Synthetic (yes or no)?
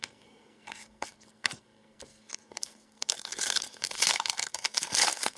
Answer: yes